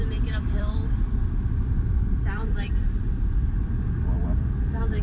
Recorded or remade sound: remade